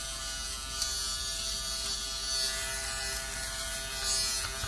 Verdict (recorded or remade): recorded